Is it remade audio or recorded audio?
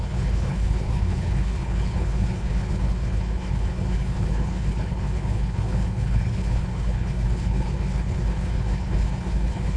remade